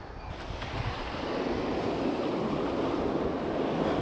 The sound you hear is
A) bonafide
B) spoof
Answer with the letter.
A